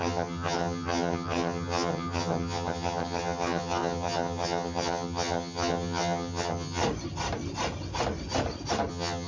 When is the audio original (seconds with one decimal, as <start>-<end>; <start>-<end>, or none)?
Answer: 6.8-8.9